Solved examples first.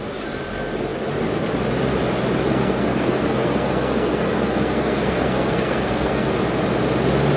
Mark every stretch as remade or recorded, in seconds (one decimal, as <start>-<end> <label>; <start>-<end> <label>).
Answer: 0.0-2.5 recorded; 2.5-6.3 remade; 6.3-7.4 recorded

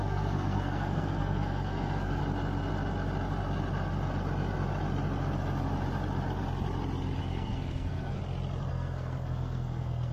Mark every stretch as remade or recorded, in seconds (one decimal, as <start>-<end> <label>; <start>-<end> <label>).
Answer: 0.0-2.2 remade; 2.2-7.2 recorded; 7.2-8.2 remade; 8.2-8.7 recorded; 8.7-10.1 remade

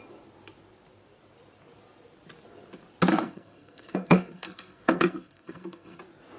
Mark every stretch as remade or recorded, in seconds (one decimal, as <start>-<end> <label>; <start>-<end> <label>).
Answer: 0.0-3.1 recorded; 3.1-6.0 remade; 6.0-6.4 recorded